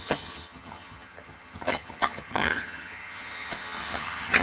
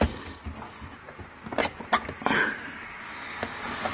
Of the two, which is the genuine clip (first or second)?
second